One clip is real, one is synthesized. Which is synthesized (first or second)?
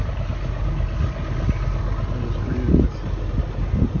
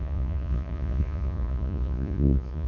second